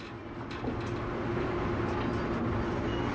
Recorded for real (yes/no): yes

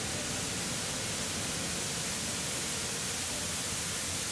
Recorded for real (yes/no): yes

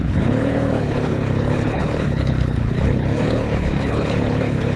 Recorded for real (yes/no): no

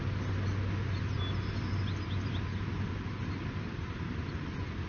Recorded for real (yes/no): yes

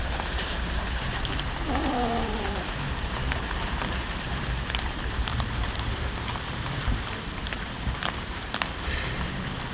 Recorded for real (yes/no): no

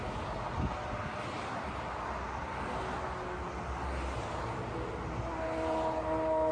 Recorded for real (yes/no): yes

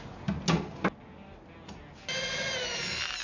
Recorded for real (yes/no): yes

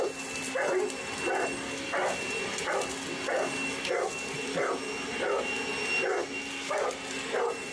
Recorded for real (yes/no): yes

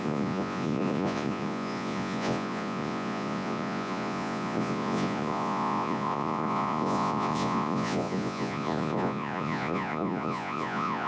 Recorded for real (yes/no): no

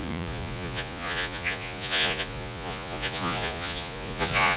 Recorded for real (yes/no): no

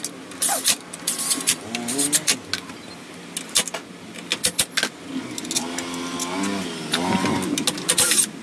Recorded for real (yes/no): yes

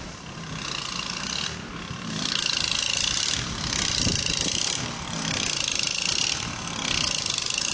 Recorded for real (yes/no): yes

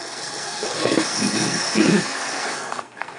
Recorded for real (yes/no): no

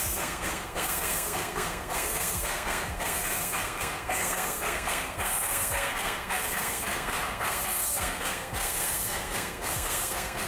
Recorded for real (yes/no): no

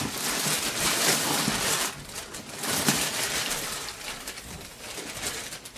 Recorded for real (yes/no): yes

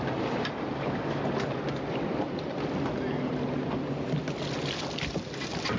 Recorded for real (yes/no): yes